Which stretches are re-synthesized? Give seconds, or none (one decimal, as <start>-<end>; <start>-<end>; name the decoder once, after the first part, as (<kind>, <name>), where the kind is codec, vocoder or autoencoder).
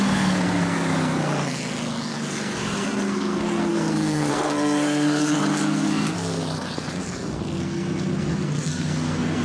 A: 0.0-9.4 (codec, SNAC)